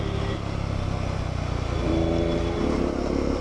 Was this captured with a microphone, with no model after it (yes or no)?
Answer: yes